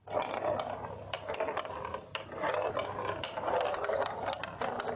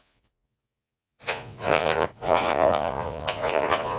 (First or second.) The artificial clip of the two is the second